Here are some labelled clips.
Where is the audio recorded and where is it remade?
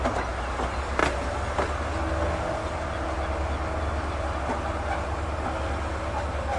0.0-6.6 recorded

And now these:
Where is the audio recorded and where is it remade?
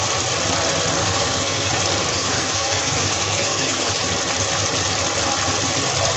0.0-1.0 recorded; 1.0-1.7 remade; 1.7-2.1 recorded; 2.1-3.9 remade; 3.9-6.2 recorded